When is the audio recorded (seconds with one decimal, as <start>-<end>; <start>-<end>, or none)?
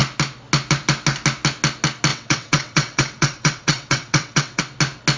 0.0-2.1; 4.6-5.2